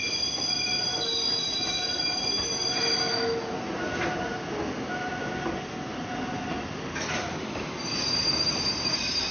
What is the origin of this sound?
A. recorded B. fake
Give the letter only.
A